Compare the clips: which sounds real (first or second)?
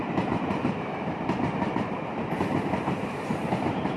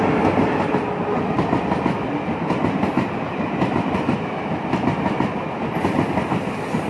second